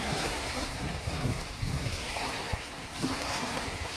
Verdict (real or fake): fake